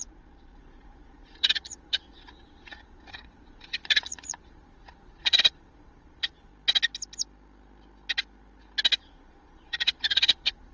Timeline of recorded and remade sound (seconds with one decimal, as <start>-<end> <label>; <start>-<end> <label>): 0.0-6.5 remade; 6.5-9.0 recorded; 9.0-10.7 remade